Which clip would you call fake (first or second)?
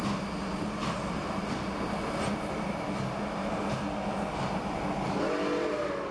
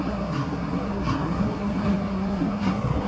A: second